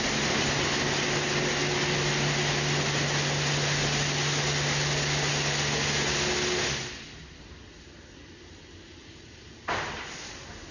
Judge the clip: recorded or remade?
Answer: recorded